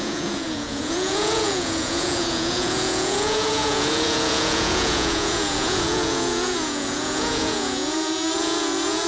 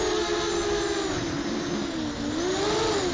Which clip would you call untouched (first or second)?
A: second